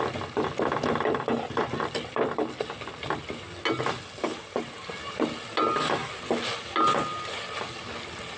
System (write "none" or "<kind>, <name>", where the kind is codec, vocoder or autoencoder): none